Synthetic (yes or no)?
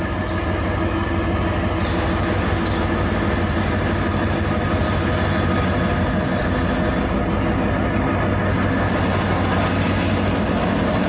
no